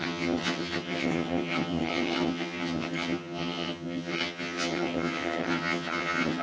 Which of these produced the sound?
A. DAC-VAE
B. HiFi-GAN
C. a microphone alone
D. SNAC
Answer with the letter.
B